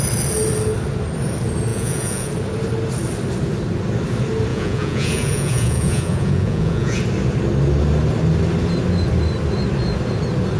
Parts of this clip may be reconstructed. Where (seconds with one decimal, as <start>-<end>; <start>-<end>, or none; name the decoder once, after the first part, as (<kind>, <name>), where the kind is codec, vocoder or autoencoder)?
1.7-2.3 (vocoder, Vocos); 4.5-7.0